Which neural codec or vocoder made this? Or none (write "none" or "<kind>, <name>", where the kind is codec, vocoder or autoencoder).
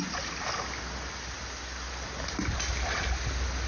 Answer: none